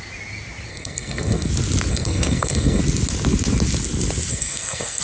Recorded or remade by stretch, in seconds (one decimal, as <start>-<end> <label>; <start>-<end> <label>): 0.0-0.7 recorded; 0.7-1.5 remade; 1.5-1.9 recorded; 1.9-2.8 remade; 2.8-4.3 recorded; 4.3-5.0 remade